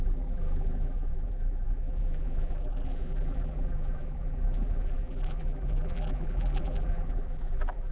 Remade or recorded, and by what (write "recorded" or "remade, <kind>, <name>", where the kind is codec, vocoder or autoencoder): remade, vocoder, BigVGAN v2